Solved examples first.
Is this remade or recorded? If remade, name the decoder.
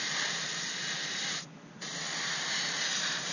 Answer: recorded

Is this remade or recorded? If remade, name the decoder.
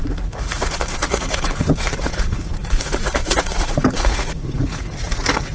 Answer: remade, vocoder, Vocos